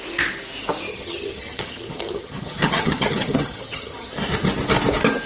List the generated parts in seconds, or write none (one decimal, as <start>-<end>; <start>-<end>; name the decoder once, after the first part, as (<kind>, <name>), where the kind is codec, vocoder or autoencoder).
0.9-4.1 (vocoder, HiFi-GAN)